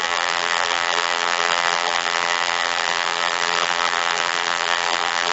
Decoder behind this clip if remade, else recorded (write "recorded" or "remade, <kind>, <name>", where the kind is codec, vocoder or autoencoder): remade, vocoder, BigVGAN v2